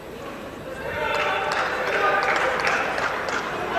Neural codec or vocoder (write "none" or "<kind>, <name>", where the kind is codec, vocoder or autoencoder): vocoder, BigVGAN v2